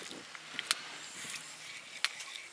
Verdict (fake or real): real